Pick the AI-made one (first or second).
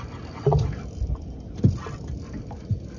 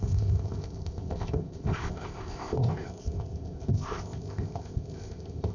second